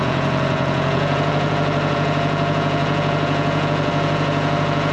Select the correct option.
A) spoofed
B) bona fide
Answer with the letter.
A